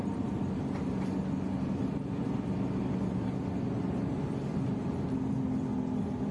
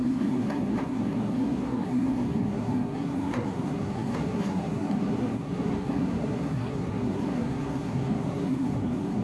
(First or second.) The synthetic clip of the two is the second